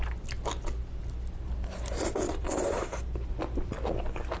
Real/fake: real